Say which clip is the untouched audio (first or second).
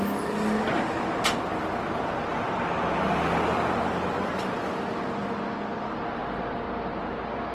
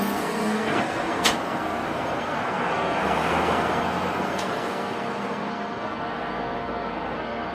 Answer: first